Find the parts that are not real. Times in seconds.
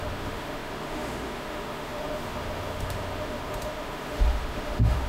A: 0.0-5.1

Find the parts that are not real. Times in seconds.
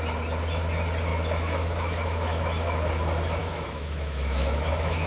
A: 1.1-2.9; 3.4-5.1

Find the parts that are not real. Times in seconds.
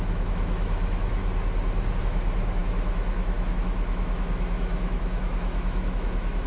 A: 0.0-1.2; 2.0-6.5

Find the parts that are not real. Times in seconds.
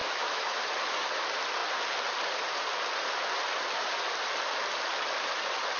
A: 0.0-0.7